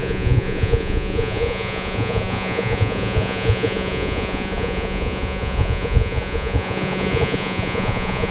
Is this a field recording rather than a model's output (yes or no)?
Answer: no